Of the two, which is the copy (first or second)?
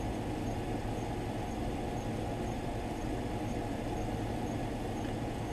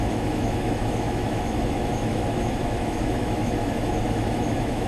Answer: second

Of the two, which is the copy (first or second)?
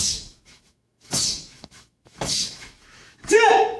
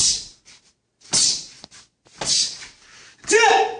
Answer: first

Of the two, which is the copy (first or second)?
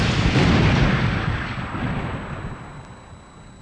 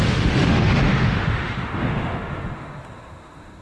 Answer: second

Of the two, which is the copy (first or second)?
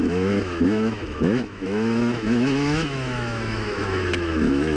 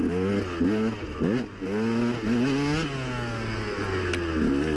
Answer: first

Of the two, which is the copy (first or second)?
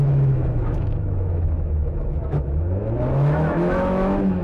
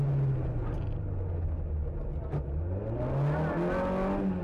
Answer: first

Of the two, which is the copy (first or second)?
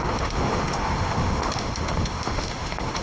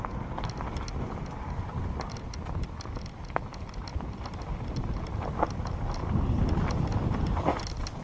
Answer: first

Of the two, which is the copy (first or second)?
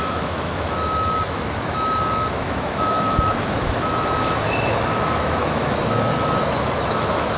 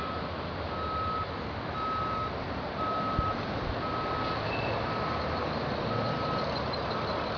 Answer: first